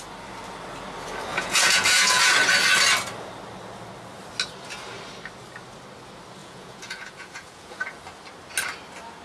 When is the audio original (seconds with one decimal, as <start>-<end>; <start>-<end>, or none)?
0.0-1.3; 2.3-6.4; 8.0-9.2